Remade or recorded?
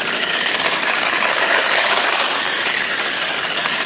remade